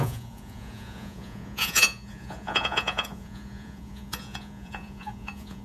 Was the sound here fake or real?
fake